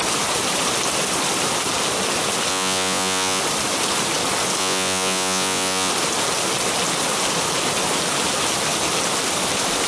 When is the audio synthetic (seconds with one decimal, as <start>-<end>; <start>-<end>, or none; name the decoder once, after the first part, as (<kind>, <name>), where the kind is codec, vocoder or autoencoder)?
2.5-3.4 (vocoder, Vocos); 4.6-5.9